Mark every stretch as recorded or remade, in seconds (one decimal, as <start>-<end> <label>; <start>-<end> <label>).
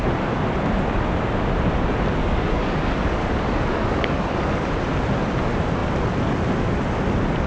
0.0-2.2 recorded; 2.2-4.7 remade; 4.7-7.5 recorded